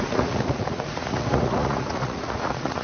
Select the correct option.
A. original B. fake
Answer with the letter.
B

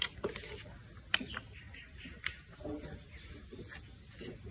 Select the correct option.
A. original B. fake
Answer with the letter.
A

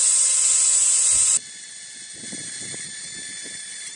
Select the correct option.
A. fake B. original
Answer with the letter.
B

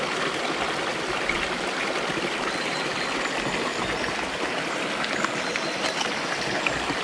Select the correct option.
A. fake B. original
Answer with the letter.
B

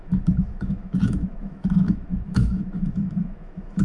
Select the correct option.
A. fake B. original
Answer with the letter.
A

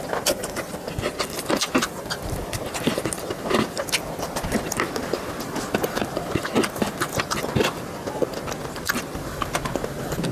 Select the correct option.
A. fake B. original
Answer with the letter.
B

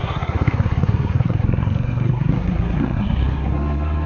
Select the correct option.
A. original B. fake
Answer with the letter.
B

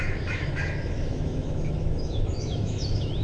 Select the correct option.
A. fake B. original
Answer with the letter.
A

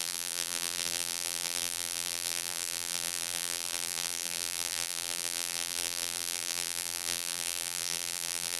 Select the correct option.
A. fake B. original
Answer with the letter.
A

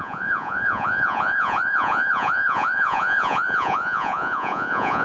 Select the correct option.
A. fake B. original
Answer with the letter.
A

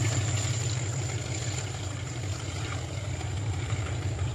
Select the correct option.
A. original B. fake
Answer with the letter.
B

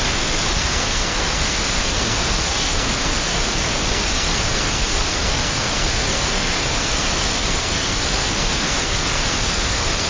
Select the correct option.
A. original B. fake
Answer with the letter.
B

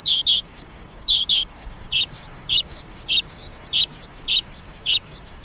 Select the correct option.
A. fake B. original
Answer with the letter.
A